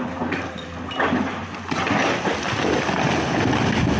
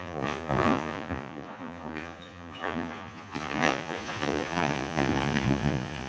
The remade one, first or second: second